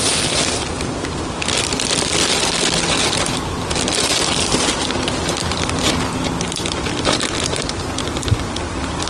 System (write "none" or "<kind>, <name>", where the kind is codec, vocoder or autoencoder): none